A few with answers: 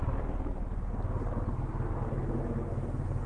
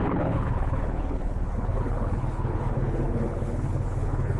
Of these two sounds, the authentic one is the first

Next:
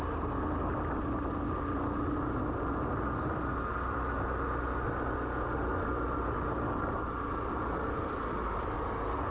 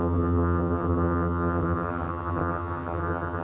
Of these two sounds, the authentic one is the first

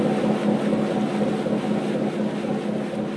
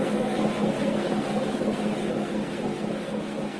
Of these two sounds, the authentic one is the first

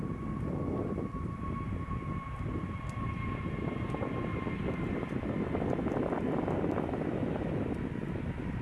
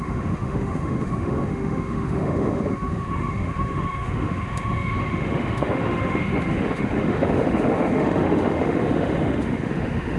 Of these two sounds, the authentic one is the first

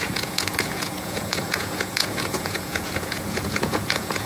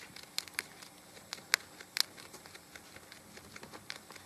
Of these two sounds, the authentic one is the second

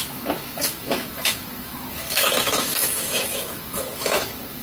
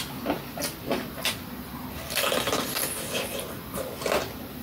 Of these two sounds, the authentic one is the second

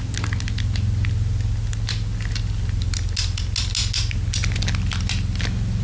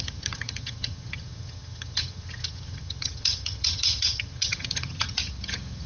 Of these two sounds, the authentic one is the first